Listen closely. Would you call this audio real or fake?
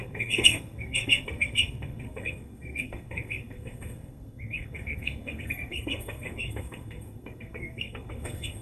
fake